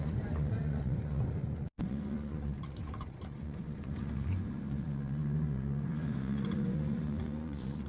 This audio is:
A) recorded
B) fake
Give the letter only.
B